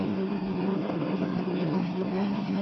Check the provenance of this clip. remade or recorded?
remade